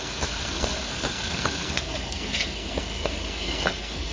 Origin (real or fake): fake